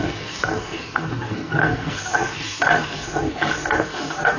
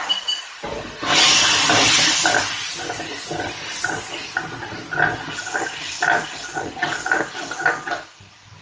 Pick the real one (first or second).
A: second